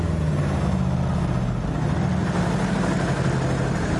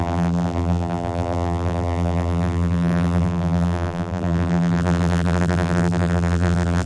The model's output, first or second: second